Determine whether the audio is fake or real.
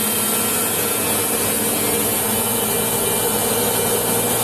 real